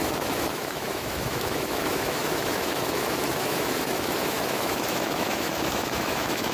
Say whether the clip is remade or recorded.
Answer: remade